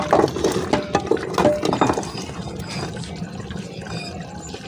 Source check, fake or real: real